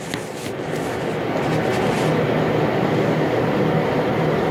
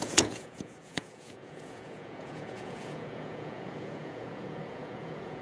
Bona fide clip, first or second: first